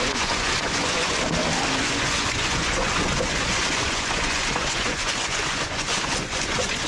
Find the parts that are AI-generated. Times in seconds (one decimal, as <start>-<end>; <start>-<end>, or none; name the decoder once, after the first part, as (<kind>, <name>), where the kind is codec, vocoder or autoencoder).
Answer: 0.0-1.2 (vocoder, Vocos); 1.8-6.9